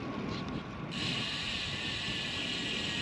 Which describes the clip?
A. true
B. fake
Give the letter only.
A